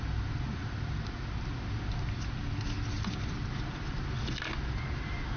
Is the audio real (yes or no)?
yes